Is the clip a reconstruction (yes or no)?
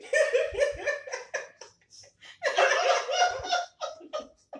no